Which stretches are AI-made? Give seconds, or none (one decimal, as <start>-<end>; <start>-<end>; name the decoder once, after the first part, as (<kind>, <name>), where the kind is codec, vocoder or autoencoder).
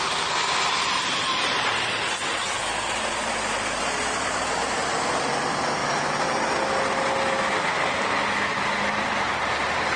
none